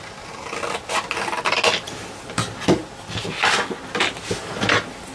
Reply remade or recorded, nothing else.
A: recorded